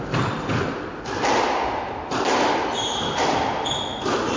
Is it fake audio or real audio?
real